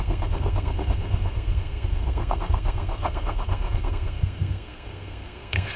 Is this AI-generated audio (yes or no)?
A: yes